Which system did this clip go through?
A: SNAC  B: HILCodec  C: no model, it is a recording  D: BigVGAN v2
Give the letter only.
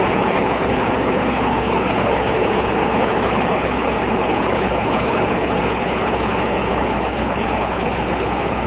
B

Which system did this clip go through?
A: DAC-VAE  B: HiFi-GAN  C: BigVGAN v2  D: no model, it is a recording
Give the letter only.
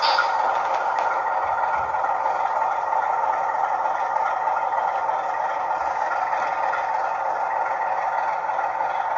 D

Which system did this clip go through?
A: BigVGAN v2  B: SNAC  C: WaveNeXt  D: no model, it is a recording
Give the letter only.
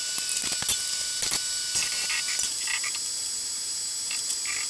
D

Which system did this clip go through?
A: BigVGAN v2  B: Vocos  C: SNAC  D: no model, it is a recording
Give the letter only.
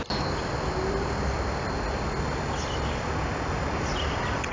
A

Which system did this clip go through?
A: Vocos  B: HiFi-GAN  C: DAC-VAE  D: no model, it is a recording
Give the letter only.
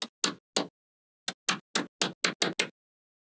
D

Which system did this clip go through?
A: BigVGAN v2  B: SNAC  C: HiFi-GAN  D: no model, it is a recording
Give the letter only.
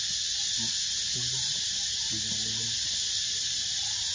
D